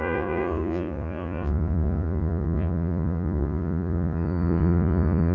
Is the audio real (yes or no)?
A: no